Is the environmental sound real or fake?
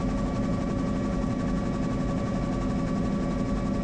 real